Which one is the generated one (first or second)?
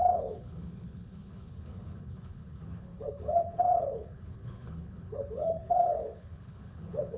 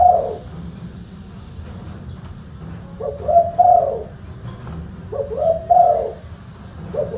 first